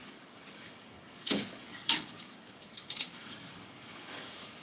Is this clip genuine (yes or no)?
no